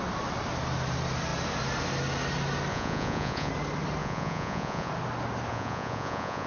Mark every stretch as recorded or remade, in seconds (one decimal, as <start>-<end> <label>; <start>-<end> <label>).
0.0-2.7 recorded; 2.7-3.5 remade; 3.5-4.0 recorded; 4.0-4.9 remade; 4.9-5.5 recorded; 5.5-6.5 remade